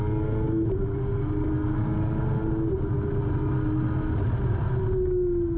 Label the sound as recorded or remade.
recorded